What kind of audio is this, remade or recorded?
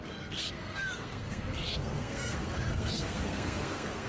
remade